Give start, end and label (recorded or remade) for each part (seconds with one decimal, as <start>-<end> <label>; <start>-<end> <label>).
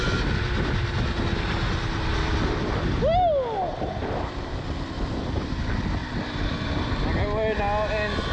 0.0-3.7 recorded; 3.7-5.6 remade; 5.6-6.0 recorded; 6.0-7.2 remade; 7.2-8.3 recorded